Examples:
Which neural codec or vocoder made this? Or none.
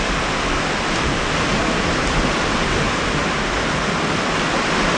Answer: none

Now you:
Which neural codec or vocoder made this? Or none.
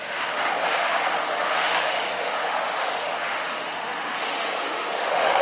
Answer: autoencoder, DAC-VAE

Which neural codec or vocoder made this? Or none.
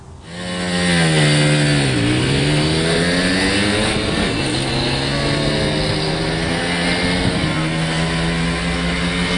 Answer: none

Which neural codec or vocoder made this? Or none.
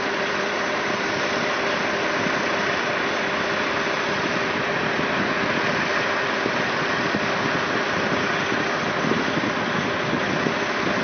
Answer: none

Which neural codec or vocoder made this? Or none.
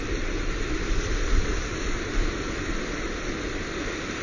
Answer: none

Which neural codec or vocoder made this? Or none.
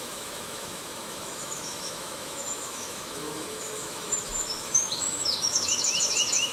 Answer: autoencoder, DAC-VAE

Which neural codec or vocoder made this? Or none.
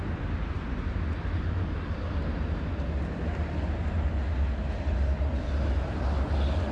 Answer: none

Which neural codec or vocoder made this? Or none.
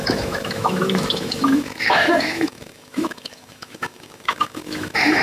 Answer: autoencoder, DAC-VAE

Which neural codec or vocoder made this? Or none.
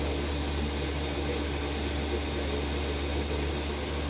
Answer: none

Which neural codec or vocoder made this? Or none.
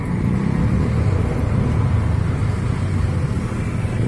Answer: none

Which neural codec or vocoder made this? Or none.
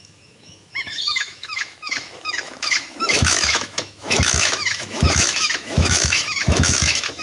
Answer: autoencoder, DAC-VAE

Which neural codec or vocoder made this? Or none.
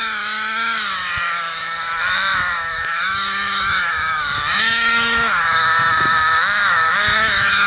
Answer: autoencoder, DAC-VAE